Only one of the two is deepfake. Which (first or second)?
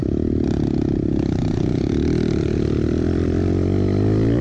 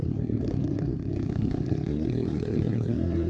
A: second